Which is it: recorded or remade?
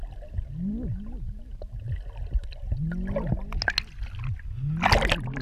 recorded